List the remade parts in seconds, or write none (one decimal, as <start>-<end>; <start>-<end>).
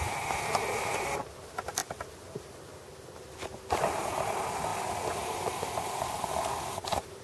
4.7-5.6